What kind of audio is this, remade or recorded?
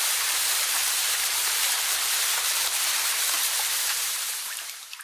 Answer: remade